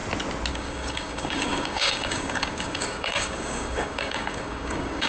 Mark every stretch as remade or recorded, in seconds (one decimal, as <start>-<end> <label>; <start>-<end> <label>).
0.0-0.5 recorded; 0.5-5.1 remade

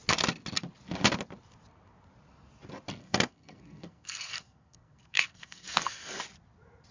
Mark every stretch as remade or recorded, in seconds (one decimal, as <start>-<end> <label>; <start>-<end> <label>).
0.0-3.0 recorded; 3.0-6.2 remade; 6.2-6.9 recorded

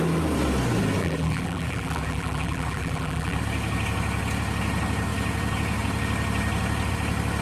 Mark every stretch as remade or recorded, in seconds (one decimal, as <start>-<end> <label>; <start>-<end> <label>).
0.0-1.0 recorded; 1.0-3.4 remade; 3.4-7.4 recorded

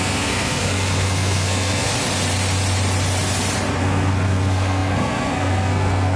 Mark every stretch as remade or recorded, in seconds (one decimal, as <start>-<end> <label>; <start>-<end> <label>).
0.0-1.9 remade; 1.9-3.8 recorded; 3.8-6.2 remade

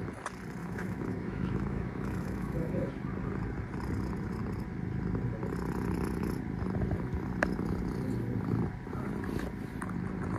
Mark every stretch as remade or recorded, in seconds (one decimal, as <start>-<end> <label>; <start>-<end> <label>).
0.0-0.6 recorded; 0.6-2.9 remade; 2.9-10.4 recorded

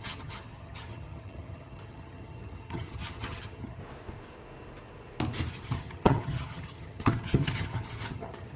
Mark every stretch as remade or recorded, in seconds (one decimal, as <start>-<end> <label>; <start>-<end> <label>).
0.0-3.8 remade; 3.8-5.5 recorded; 5.5-8.6 remade

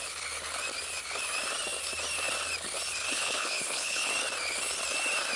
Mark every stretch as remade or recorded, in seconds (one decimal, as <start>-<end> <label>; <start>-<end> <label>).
0.0-3.1 recorded; 3.1-4.1 remade; 4.1-5.4 recorded

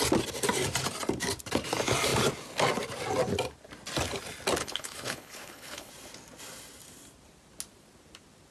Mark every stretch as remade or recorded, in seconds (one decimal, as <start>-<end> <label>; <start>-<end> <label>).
0.0-4.6 recorded; 4.6-5.9 remade; 5.9-8.5 recorded